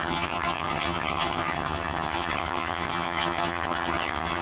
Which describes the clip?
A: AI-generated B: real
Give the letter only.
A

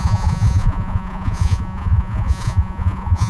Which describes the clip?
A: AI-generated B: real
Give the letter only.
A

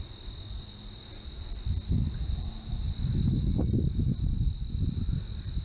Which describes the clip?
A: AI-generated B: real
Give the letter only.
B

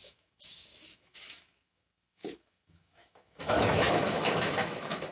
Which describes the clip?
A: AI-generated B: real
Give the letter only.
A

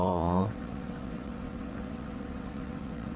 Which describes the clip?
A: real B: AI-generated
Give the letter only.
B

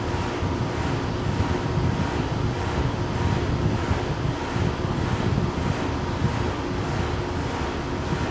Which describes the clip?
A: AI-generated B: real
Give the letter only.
B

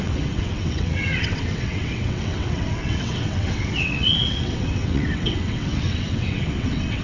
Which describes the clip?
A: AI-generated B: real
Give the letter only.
A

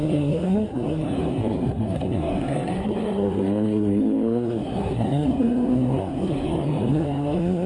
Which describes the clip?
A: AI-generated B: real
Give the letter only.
A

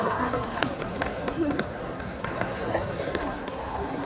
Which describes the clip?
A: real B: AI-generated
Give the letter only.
B